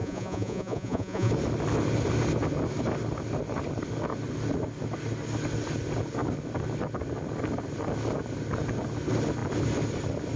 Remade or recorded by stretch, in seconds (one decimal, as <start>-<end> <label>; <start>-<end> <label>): 0.0-1.3 remade; 1.3-10.4 recorded